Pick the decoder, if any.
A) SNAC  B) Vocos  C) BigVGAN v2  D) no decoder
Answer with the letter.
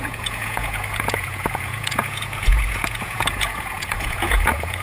B